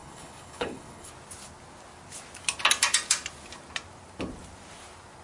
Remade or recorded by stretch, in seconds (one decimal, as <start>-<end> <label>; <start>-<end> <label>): 0.0-1.1 remade; 1.1-5.2 recorded